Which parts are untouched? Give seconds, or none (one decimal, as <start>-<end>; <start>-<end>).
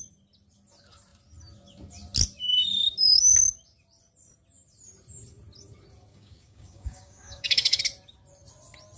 0.0-6.1; 7.8-9.0